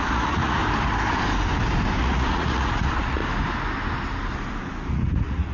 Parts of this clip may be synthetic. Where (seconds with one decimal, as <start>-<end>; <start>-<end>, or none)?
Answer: 0.0-0.6; 2.0-3.2; 4.9-5.5